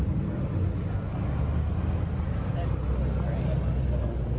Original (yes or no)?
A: yes